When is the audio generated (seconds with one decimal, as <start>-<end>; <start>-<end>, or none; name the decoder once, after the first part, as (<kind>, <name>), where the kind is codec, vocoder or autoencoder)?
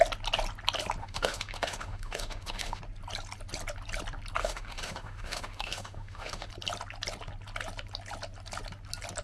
1.0-2.8 (autoencoder, DAC-VAE); 4.4-6.5